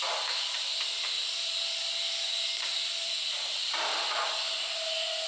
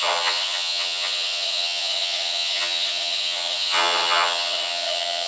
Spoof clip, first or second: second